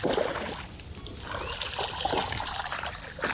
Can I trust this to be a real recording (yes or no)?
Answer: yes